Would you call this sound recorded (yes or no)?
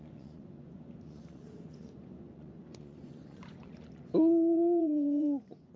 no